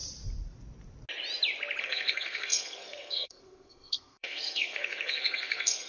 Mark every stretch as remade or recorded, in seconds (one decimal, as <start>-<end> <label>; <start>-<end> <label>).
0.0-1.8 recorded; 1.8-5.9 remade